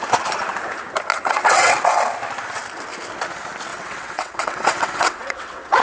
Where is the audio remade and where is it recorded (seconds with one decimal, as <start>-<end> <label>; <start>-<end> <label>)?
0.0-1.1 recorded; 1.1-1.7 remade; 1.7-3.7 recorded; 3.7-5.8 remade